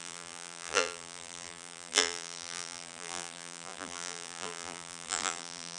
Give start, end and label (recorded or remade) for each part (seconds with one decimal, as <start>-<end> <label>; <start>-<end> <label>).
0.0-5.8 remade